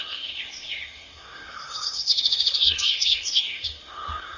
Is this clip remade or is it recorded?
remade